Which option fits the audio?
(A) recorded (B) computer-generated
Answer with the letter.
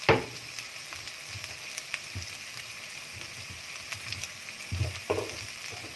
B